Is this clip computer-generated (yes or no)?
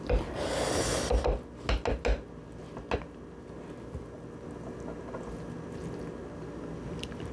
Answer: no